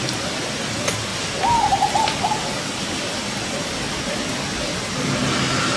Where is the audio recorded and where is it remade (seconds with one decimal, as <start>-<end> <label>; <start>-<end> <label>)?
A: 0.0-5.8 recorded